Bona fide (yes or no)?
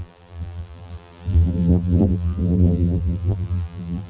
no